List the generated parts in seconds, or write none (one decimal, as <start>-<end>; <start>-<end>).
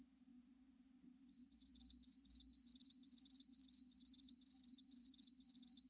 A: none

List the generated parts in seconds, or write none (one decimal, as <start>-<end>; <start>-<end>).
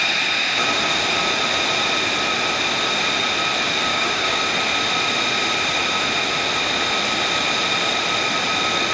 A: 3.9-4.4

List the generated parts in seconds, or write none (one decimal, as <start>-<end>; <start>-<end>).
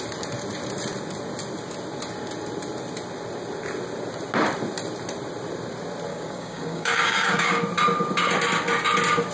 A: 6.1-7.6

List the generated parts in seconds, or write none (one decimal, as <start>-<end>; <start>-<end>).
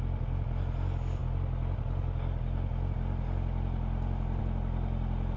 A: none